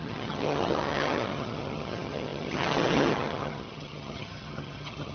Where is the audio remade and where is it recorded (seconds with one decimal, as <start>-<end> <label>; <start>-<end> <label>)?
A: 0.0-5.1 remade